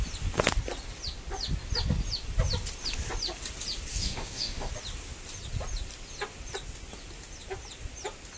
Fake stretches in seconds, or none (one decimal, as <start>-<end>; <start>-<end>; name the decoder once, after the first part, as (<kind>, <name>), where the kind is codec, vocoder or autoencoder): 3.9-4.7 (codec, DAC)

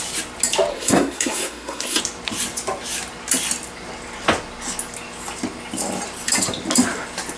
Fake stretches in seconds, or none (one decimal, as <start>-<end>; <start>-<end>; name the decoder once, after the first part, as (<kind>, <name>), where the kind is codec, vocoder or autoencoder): 0.7-2.0 (codec, SNAC)